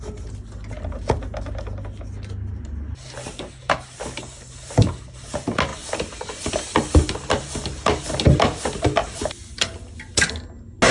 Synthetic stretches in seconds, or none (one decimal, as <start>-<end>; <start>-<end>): 5.7-6.5; 9.0-10.3